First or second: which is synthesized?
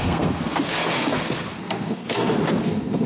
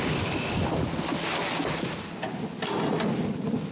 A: first